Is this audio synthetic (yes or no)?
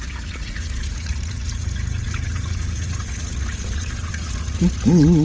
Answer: yes